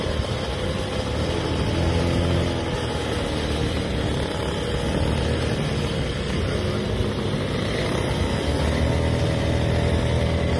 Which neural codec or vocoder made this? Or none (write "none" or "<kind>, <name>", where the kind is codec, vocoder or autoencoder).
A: none